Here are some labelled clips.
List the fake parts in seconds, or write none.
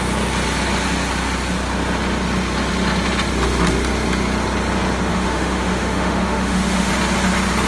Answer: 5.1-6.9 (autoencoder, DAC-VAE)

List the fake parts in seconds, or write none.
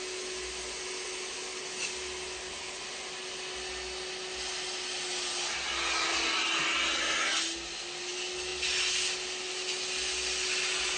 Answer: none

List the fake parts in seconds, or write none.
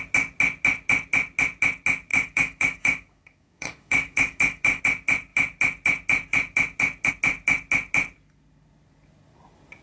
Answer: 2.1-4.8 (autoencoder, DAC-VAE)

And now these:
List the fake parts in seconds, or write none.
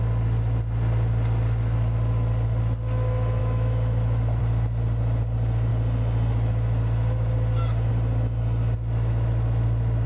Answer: 3.4-4.4 (autoencoder, DAC-VAE)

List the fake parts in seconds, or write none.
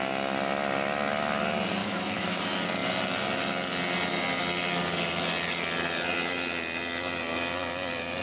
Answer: 1.8-2.4 (autoencoder, DAC-VAE)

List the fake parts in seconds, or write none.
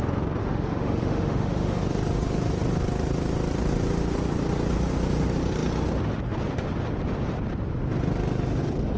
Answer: 0.4-1.8 (autoencoder, DAC-VAE)